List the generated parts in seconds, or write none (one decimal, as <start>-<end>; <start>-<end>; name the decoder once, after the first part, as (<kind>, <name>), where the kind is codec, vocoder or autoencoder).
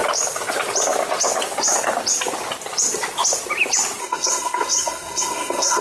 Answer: 4.0-5.8 (codec, SNAC)